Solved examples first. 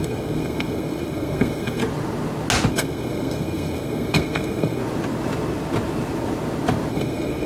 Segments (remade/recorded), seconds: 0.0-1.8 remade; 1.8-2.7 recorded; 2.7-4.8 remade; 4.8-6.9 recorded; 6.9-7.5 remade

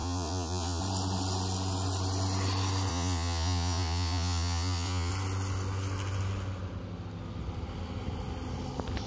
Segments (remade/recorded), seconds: 0.0-0.8 remade; 0.8-2.9 recorded; 2.9-5.1 remade; 5.1-9.1 recorded

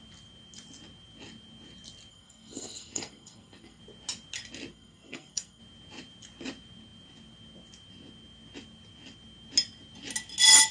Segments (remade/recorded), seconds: 0.0-2.1 recorded; 2.1-3.8 remade; 3.8-4.7 recorded; 4.7-5.6 remade; 5.6-10.7 recorded

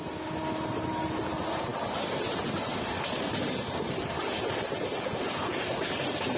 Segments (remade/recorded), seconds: 0.0-6.4 recorded

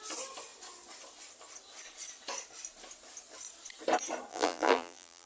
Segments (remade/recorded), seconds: 0.0-4.3 recorded; 4.3-5.3 remade

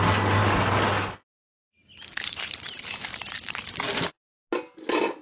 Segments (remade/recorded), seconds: 0.0-5.2 recorded